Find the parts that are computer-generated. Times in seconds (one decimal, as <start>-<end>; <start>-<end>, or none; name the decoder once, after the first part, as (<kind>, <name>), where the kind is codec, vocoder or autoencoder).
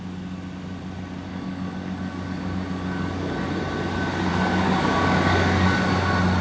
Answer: 1.3-3.6 (codec, DAC); 4.3-5.9